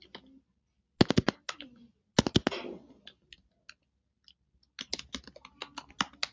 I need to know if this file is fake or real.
real